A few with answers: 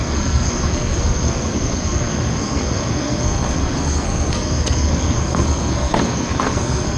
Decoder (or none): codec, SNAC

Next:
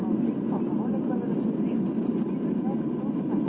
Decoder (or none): none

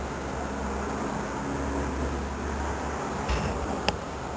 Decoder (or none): none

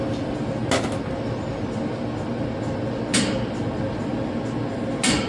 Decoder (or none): none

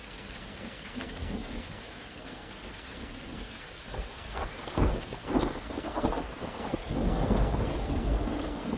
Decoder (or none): codec, SNAC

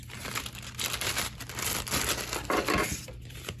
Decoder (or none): none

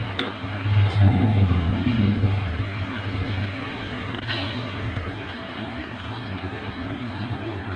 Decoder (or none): codec, SNAC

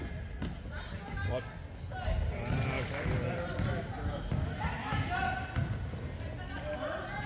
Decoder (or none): none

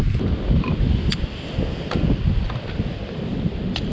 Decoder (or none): none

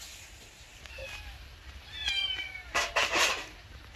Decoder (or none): none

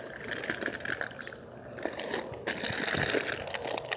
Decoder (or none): none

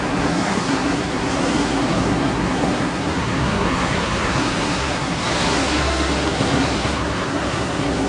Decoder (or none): codec, SNAC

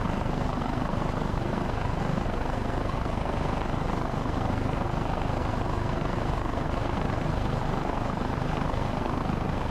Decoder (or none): codec, SNAC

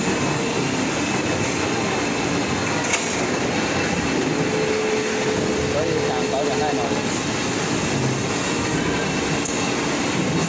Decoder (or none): none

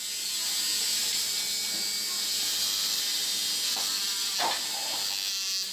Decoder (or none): none